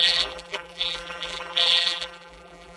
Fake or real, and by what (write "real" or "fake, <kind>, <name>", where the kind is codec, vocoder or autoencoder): fake, vocoder, BigVGAN v2